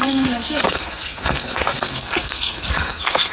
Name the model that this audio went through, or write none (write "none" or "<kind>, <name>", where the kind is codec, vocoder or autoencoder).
codec, SNAC